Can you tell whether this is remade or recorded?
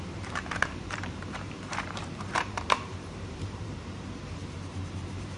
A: remade